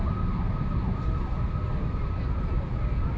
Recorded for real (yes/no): yes